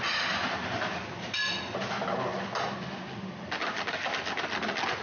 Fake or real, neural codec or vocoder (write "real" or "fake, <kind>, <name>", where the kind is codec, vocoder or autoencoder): real